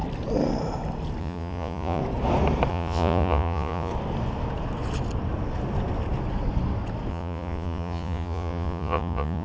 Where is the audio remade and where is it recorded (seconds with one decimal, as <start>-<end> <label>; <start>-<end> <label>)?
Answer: 0.0-1.2 recorded; 1.2-2.0 remade; 2.0-2.7 recorded; 2.7-3.9 remade; 3.9-7.1 recorded; 7.1-9.4 remade